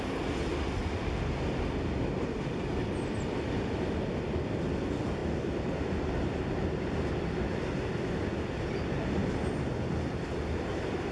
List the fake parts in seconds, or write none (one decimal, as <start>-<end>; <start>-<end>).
none